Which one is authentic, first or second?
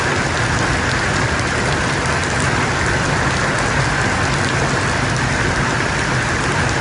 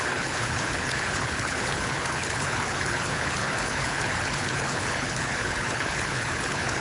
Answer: first